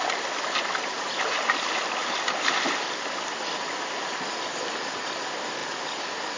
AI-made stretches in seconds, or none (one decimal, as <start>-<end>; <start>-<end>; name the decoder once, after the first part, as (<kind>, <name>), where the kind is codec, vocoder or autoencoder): none